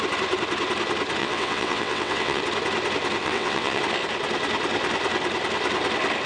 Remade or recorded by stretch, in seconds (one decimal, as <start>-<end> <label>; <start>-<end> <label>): 0.0-1.2 recorded; 1.2-2.4 remade; 2.4-3.2 recorded; 3.2-3.8 remade; 3.8-6.3 recorded

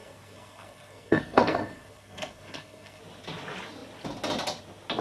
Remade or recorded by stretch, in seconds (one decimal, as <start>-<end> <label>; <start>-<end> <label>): 0.0-3.0 remade; 3.0-5.0 recorded

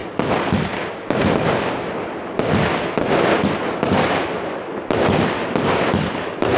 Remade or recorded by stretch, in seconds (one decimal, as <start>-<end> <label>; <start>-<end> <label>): 0.0-6.6 recorded

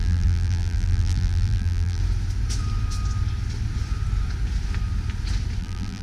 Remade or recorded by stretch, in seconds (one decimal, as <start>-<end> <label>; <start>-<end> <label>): 0.0-2.0 remade; 2.0-5.6 recorded; 5.6-6.0 remade

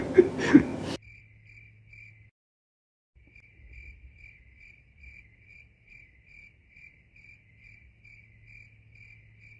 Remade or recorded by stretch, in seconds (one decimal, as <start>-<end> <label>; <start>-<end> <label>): 0.0-9.6 recorded

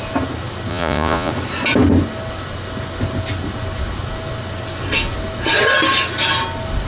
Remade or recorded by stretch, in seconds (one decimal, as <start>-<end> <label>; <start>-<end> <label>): 0.0-0.7 recorded; 0.7-1.3 remade; 1.3-6.9 recorded

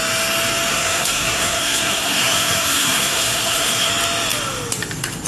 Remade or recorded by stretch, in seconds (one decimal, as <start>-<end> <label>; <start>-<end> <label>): 0.0-0.7 recorded; 0.7-3.9 remade; 3.9-5.3 recorded

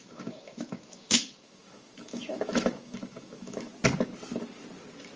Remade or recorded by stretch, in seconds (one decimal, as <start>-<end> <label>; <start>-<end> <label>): 0.0-3.7 remade; 3.7-5.2 recorded